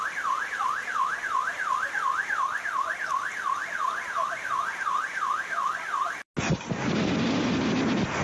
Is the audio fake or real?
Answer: real